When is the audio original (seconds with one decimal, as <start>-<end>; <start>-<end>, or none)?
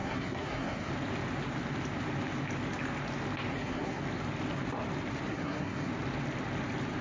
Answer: 0.9-3.5; 4.0-5.3; 5.9-7.0